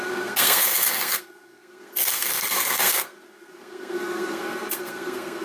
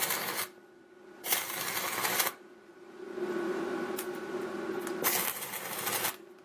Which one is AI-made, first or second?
first